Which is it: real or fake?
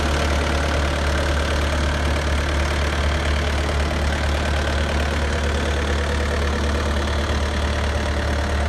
real